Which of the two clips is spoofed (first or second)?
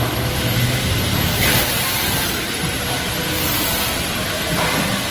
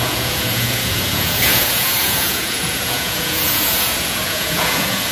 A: second